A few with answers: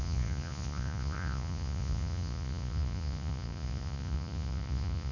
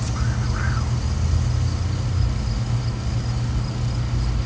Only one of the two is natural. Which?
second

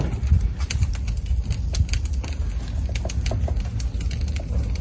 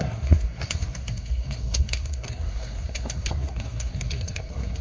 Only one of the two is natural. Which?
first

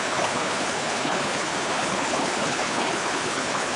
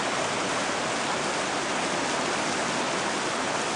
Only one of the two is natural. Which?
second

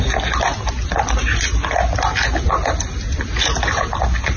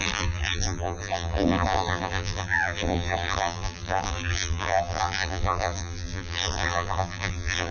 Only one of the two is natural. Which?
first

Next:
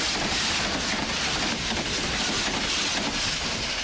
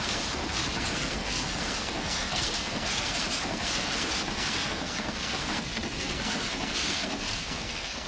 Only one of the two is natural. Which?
first